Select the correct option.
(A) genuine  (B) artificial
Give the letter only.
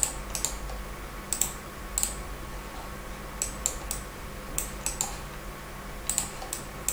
A